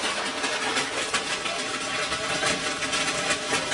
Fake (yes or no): no